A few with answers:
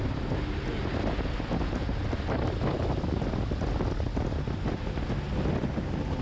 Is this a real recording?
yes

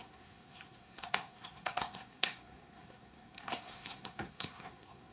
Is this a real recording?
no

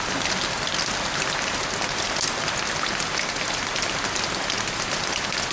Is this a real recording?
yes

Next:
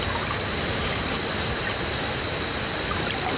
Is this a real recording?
yes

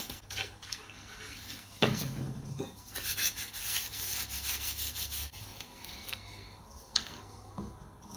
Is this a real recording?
no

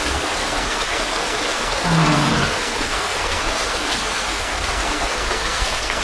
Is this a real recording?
no